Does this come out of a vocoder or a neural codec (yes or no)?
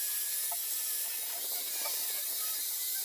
no